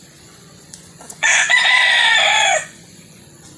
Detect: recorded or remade remade